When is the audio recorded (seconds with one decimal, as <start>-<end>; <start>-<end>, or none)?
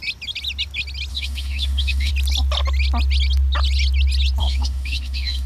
0.0-1.1; 2.1-4.4